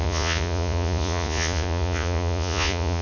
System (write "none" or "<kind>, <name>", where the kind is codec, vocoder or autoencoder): vocoder, Vocos